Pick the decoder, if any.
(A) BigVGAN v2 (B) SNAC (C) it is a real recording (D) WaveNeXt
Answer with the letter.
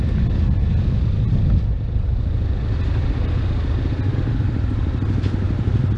C